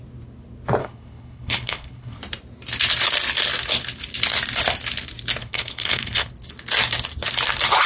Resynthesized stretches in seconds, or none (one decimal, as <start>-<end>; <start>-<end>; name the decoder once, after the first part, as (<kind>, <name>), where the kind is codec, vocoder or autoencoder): 0.8-2.2 (codec, HILCodec); 5.4-6.3